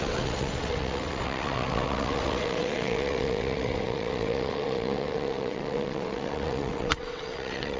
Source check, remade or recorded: remade